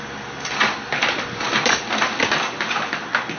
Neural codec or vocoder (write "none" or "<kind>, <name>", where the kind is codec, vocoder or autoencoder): none